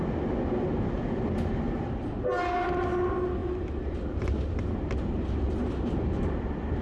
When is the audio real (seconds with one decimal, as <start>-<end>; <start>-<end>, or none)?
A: 0.0-6.8